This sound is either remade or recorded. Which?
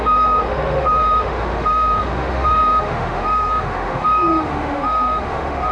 remade